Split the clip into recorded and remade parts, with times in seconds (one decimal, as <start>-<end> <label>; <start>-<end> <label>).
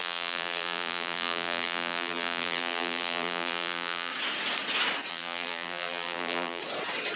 0.0-4.1 remade; 4.1-5.1 recorded; 5.1-6.6 remade; 6.6-7.2 recorded